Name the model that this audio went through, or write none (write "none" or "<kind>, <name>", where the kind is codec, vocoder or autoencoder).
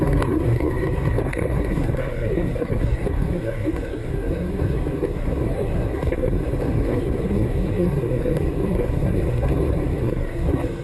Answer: codec, SNAC